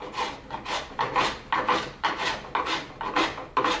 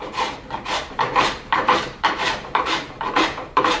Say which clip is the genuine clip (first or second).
first